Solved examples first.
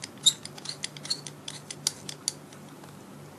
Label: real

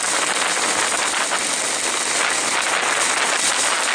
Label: real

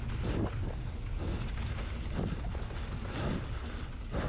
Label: real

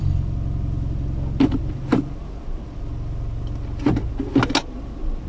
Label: real